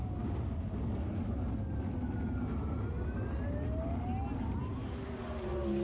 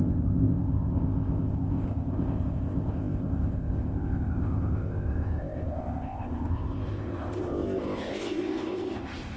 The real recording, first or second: first